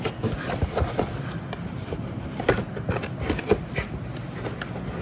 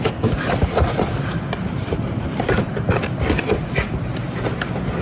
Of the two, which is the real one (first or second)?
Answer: first